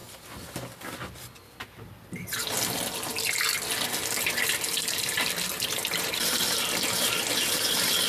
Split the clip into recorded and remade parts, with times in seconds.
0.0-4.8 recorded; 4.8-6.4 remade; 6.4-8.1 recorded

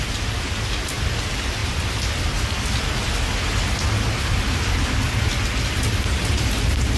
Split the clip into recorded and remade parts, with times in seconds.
0.0-7.0 recorded

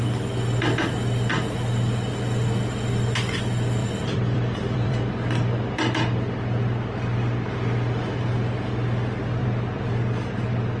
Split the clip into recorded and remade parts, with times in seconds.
0.0-3.8 recorded; 3.8-5.1 remade; 5.1-9.4 recorded; 9.4-10.8 remade